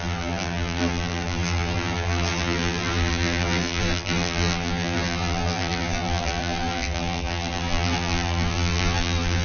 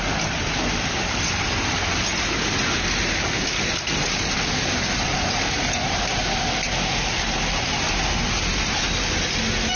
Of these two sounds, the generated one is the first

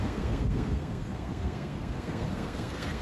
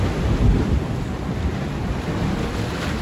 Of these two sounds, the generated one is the first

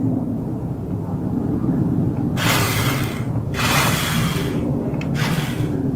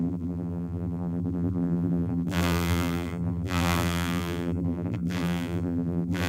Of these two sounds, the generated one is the second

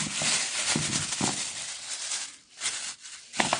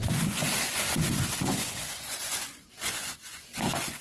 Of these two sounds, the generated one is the second